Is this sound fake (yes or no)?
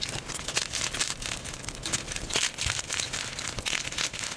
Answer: no